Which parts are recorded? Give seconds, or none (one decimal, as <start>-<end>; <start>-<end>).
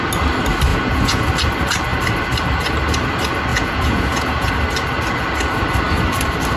0.0-0.7; 1.3-3.5; 4.5-6.6